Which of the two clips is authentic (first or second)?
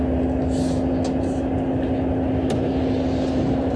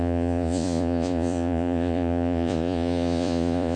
first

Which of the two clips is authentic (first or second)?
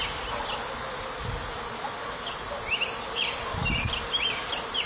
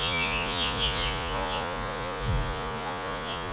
first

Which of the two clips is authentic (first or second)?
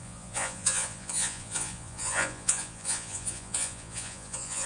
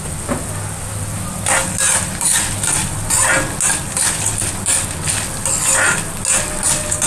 second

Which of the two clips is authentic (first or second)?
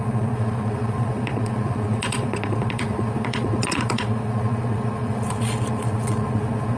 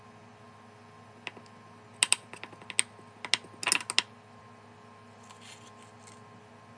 second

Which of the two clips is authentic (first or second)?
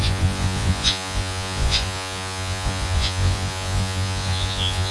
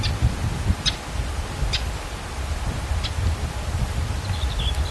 second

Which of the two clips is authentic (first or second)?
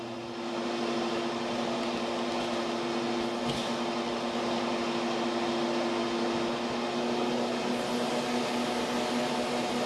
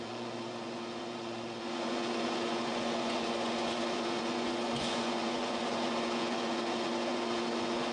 first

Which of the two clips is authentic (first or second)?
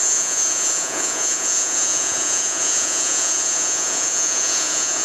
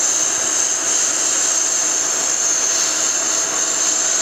second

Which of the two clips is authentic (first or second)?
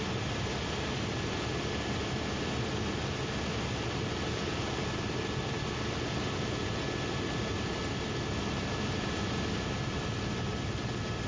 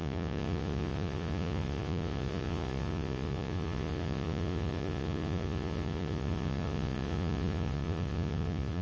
first